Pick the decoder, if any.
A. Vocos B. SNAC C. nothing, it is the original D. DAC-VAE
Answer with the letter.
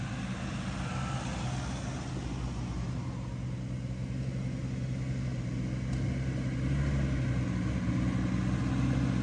C